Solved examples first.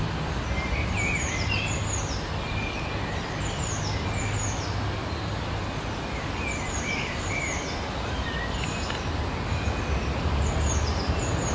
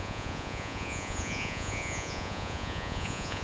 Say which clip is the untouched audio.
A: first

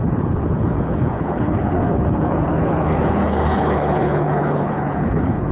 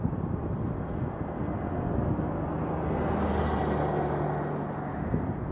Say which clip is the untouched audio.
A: second